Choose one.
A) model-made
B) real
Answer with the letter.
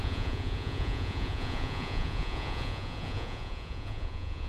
A